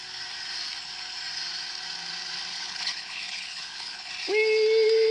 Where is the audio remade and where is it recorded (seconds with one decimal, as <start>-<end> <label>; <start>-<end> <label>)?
0.0-2.5 recorded; 2.5-4.1 remade; 4.1-5.1 recorded